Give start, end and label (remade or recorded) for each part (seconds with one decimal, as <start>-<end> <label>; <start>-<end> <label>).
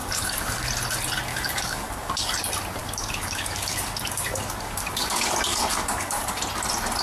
0.0-0.7 remade; 0.7-1.3 recorded; 1.3-2.3 remade; 2.3-2.8 recorded; 2.8-6.4 remade; 6.4-7.0 recorded